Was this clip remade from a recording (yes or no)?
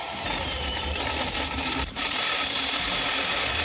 yes